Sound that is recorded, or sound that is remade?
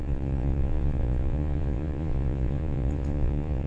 remade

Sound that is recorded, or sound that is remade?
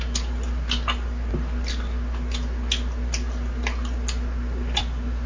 recorded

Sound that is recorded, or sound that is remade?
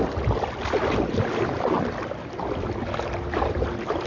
recorded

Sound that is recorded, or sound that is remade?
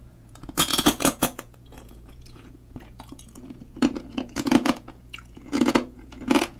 remade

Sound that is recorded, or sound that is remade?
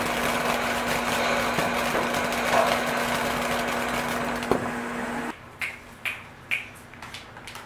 recorded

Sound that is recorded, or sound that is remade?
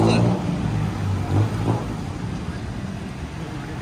recorded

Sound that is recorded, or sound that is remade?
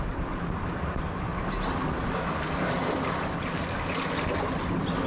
recorded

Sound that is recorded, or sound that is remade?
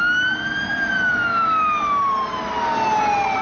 recorded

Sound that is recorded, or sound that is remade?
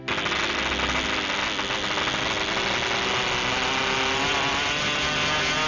recorded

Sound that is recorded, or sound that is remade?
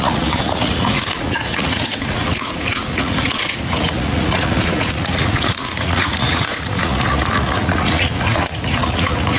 remade